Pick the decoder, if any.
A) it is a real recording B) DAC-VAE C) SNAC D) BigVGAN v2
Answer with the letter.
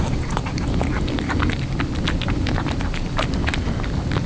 D